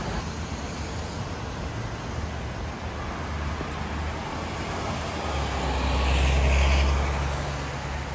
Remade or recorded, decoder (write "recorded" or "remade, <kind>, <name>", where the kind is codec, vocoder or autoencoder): recorded